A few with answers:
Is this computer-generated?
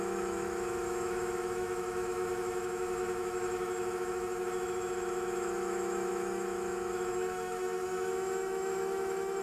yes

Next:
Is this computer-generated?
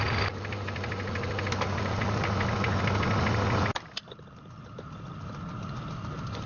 no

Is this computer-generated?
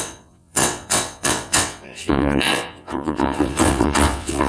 yes